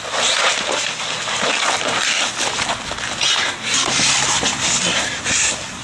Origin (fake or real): real